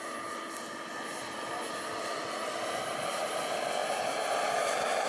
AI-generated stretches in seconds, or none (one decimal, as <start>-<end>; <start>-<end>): none